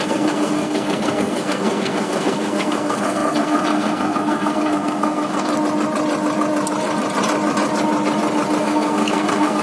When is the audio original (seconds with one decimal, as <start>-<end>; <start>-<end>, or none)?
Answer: 5.5-8.6